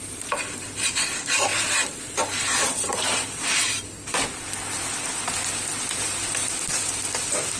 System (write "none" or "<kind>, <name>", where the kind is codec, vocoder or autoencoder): vocoder, BigVGAN v2